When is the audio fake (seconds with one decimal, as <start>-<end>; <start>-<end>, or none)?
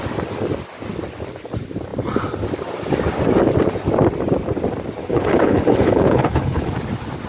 5.0-6.7